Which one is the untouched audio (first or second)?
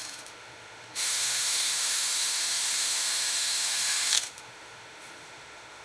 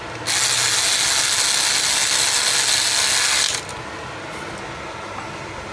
second